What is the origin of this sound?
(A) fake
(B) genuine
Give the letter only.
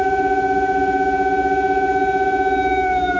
B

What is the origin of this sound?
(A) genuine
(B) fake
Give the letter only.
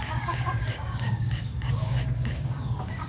B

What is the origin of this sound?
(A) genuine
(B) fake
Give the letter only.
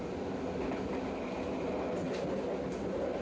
A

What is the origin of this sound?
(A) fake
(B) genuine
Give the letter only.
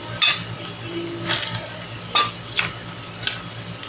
B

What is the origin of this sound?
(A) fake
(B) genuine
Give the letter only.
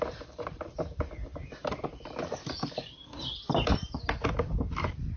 A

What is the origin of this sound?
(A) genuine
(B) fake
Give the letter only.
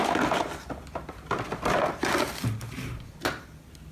A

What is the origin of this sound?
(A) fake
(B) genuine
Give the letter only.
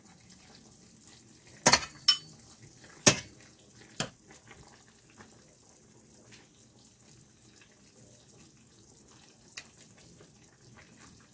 B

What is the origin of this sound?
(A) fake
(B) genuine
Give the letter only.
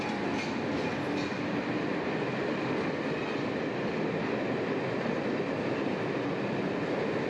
B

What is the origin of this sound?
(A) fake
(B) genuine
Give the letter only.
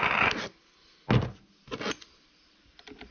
B